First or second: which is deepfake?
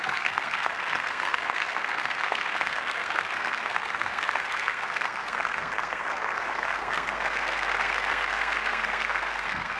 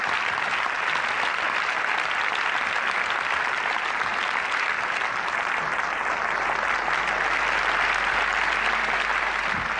first